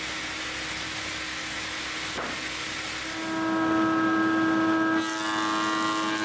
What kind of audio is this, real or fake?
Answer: real